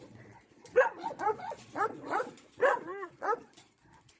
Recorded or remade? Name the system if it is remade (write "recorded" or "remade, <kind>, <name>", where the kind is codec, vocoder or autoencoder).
remade, vocoder, Vocos